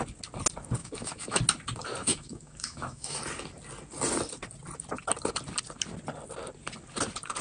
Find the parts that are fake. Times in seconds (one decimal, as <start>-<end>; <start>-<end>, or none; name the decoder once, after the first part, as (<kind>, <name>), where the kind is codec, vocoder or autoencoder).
0.8-1.4 (autoencoder, DAC-VAE); 2.0-3.2